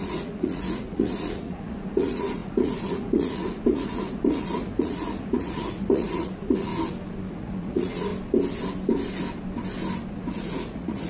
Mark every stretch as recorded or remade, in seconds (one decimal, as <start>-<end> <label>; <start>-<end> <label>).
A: 0.0-6.7 remade; 6.7-7.3 recorded; 7.3-8.1 remade; 8.1-10.1 recorded; 10.1-11.1 remade